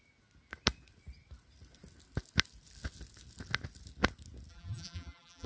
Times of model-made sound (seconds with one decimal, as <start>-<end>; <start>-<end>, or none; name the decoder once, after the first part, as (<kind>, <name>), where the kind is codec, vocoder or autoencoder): 4.5-5.5 (vocoder, BigVGAN v2)